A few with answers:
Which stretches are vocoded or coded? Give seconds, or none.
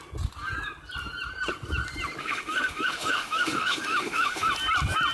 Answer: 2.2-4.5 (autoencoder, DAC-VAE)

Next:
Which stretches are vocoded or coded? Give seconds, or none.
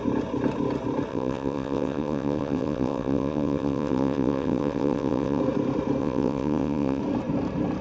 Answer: 1.1-5.4 (vocoder, WaveNeXt); 6.0-7.0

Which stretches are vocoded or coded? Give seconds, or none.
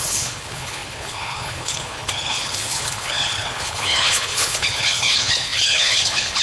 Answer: 0.0-6.4 (codec, HILCodec)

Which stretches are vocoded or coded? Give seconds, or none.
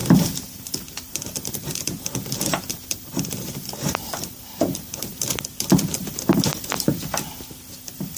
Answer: 0.0-5.1 (vocoder, BigVGAN v2)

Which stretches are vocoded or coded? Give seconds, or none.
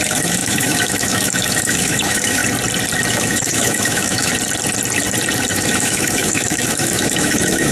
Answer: 0.0-2.4 (autoencoder, DAC-VAE); 3.1-4.3; 5.5-7.7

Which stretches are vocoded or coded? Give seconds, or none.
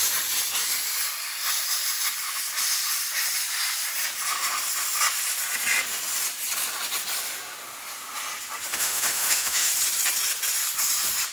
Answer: 8.7-9.7 (autoencoder, DAC-VAE)